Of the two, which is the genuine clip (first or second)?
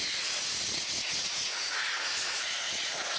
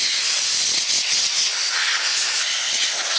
second